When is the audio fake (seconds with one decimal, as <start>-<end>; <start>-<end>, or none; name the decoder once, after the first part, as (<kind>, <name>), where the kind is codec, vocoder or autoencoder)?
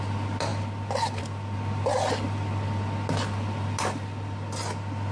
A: none